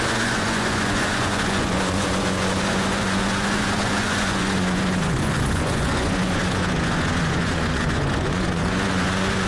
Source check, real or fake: fake